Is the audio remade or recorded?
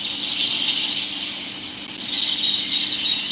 recorded